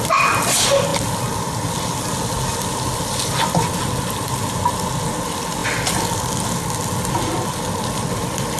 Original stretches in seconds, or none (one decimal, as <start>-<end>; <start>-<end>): 0.0-8.6